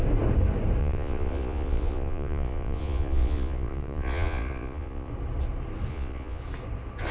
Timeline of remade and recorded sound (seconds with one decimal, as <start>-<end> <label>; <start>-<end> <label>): 0.0-0.8 recorded; 0.8-5.1 remade; 5.1-5.9 recorded; 5.9-6.4 remade; 6.4-7.1 recorded